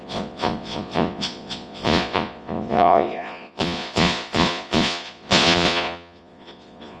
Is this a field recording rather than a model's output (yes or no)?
no